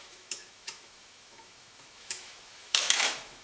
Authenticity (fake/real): fake